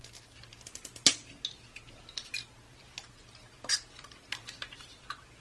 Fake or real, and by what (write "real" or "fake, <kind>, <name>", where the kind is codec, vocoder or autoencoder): real